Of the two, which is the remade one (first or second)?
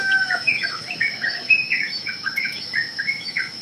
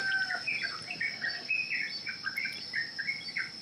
first